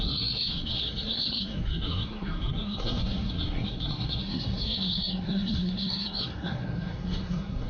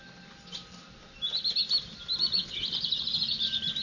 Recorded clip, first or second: second